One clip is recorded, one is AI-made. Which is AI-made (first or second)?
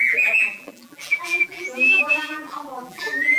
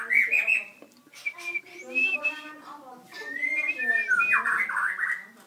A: first